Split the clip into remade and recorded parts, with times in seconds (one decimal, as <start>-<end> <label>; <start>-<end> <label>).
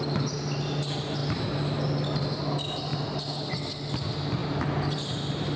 0.0-5.6 recorded